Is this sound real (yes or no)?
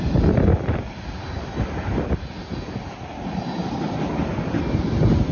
yes